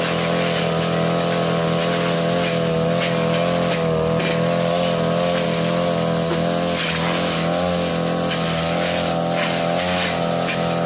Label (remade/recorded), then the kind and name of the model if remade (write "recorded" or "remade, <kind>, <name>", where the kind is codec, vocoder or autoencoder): recorded